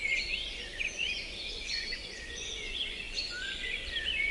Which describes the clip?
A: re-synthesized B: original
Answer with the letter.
A